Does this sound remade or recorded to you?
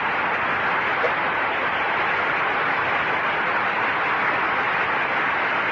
recorded